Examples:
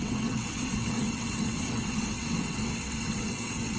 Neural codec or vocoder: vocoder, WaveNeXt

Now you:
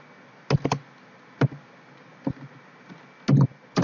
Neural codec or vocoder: none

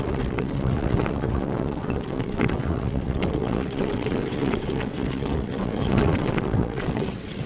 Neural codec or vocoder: vocoder, WaveNeXt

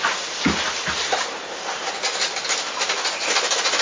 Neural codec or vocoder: none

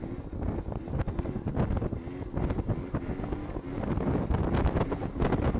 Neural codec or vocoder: none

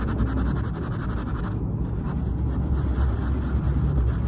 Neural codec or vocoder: none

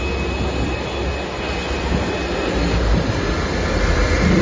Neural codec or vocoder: none